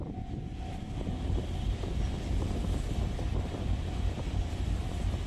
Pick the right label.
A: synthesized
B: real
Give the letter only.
B